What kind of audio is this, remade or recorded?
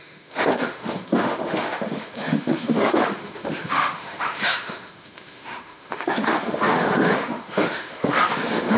remade